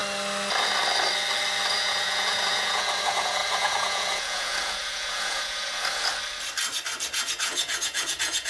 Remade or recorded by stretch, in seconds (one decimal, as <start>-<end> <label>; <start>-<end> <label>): 0.0-1.7 recorded; 1.7-6.1 remade; 6.1-7.1 recorded; 7.1-8.5 remade